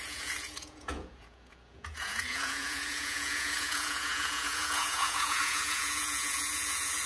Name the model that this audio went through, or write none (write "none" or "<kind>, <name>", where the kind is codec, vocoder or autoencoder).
vocoder, Vocos